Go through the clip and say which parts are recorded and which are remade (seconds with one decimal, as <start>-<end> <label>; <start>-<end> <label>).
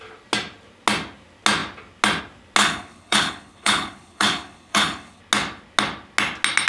0.0-2.6 recorded; 2.6-5.2 remade; 5.2-6.7 recorded